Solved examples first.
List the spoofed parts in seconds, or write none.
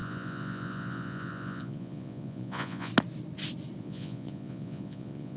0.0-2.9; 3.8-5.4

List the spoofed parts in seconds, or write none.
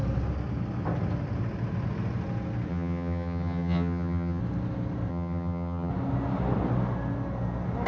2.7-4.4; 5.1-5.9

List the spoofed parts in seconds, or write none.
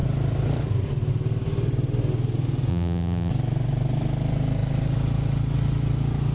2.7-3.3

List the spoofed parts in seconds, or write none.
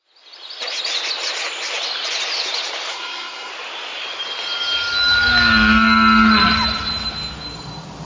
2.9-3.5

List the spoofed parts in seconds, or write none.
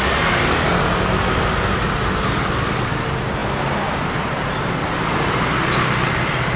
none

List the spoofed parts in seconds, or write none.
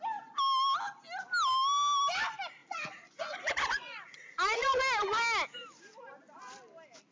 2.6-4.8